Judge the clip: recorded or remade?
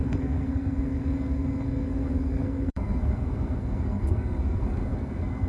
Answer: remade